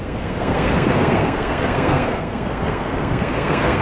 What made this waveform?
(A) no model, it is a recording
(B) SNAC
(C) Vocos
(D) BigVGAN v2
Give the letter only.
B